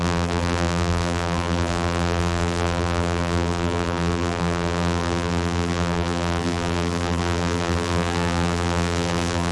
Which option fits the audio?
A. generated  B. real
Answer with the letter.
A